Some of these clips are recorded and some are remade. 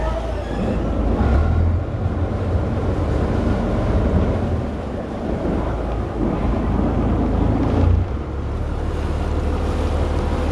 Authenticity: recorded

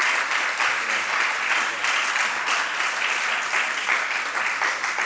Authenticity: recorded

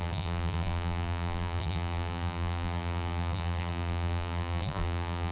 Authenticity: remade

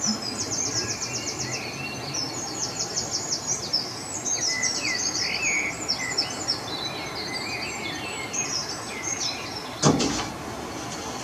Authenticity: recorded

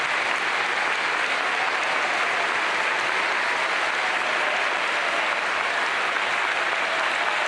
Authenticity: recorded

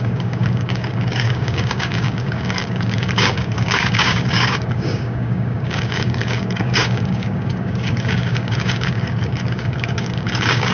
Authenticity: remade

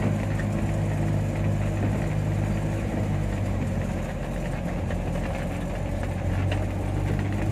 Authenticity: recorded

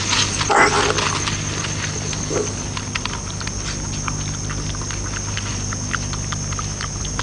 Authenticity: recorded